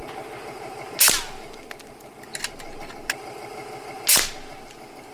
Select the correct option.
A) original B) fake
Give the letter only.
A